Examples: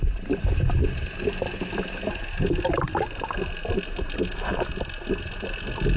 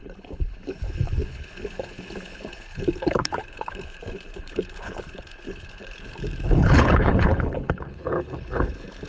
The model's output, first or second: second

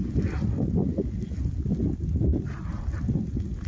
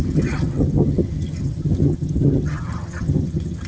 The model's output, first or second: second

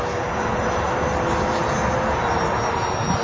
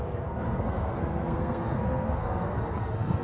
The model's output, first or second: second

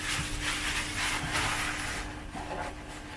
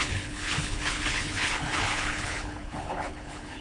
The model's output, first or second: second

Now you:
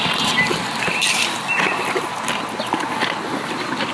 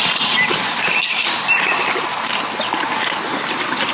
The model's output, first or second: second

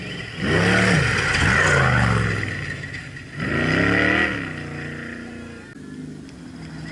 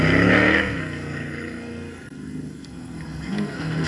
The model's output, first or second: second